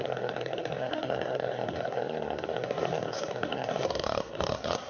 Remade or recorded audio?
remade